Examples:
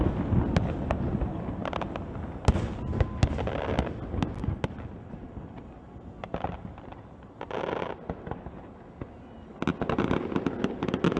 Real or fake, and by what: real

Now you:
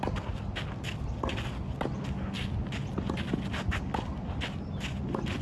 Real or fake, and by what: real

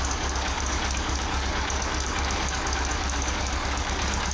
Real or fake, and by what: fake, codec, DAC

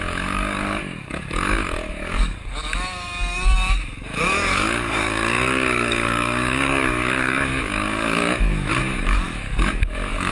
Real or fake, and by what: fake, codec, DAC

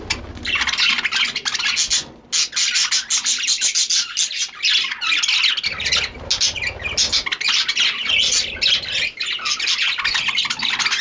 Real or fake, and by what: real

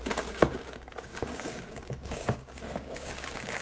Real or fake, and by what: fake, codec, DAC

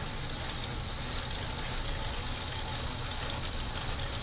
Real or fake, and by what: real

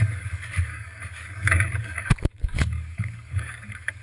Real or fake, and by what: fake, codec, DAC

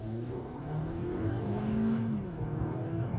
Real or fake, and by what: fake, codec, DAC